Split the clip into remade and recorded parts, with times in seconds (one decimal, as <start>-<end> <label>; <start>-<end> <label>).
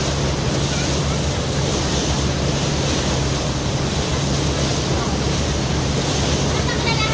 0.0-1.7 recorded; 1.7-3.7 remade; 3.7-4.7 recorded; 4.7-5.9 remade; 5.9-7.1 recorded